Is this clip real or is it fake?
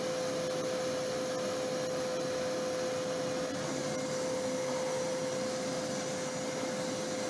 real